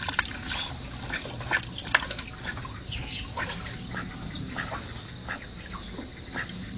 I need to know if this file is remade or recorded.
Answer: recorded